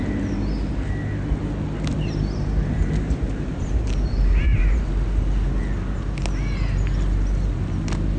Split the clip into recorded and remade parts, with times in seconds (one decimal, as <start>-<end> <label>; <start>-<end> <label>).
0.0-1.9 recorded; 1.9-4.9 remade; 4.9-8.2 recorded